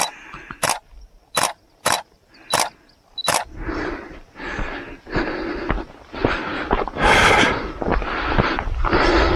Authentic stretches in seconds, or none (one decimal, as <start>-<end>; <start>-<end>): 0.0-9.4